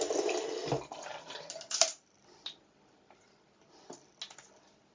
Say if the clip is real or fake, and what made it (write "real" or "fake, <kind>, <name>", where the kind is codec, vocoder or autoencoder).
real